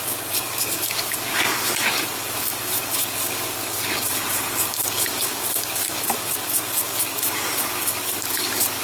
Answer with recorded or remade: remade